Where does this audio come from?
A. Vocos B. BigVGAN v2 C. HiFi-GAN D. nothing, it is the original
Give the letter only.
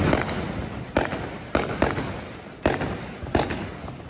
D